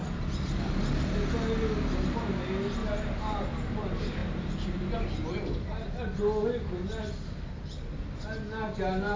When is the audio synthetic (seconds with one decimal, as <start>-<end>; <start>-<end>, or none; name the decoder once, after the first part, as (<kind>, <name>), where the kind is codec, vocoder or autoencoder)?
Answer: 2.8-3.5 (vocoder, BigVGAN v2); 4.2-4.8